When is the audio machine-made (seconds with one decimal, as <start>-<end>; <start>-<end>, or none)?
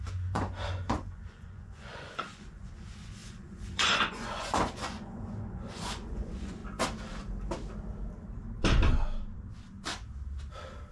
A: 0.0-6.6